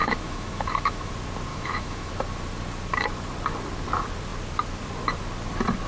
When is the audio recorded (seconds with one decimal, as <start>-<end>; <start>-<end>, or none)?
1.1-1.5; 2.1-5.9